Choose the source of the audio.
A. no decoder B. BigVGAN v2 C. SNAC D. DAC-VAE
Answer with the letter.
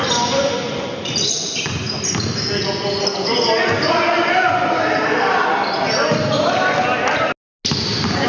A